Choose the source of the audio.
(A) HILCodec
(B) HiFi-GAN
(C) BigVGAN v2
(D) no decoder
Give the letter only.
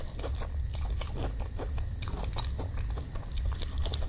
D